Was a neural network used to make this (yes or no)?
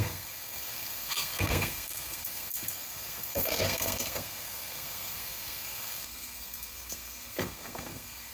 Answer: yes